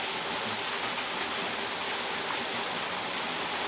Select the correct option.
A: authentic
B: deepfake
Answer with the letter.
A